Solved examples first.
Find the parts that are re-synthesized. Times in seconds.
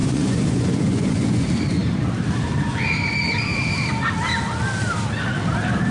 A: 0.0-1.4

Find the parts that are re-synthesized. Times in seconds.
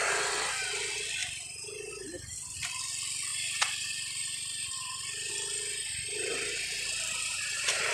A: 1.2-1.9; 3.3-5.3; 6.3-7.9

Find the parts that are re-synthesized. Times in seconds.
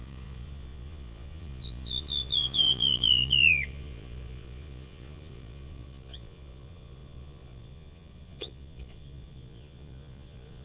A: 0.0-10.6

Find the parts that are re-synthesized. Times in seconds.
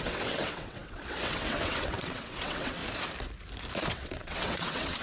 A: 0.0-2.8; 3.9-5.0